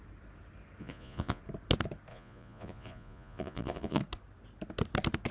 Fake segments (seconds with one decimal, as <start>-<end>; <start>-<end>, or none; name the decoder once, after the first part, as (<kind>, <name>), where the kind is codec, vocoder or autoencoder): 0.8-1.4 (vocoder, Vocos); 2.1-4.0